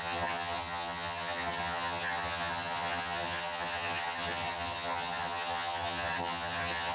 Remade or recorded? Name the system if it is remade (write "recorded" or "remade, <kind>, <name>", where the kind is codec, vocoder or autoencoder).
remade, vocoder, HiFi-GAN